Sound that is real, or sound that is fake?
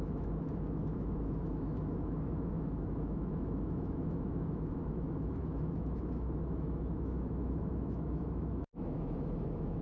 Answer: fake